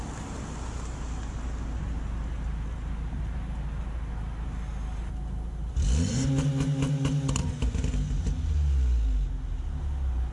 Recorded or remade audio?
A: recorded